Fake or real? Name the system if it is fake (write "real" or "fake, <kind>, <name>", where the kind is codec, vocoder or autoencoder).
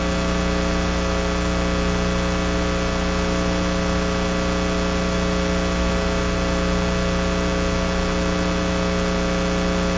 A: real